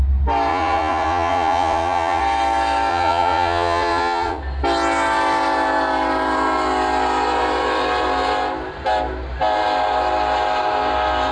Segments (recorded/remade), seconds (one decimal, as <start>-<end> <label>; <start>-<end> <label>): 0.0-0.5 recorded; 0.5-2.2 remade; 2.2-2.9 recorded; 2.9-4.4 remade; 4.4-11.3 recorded